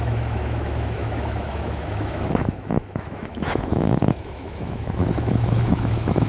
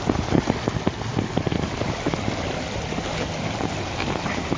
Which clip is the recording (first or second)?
second